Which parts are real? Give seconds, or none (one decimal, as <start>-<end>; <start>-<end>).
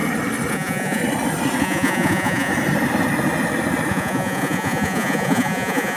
0.0-0.5; 1.0-1.6; 2.5-3.9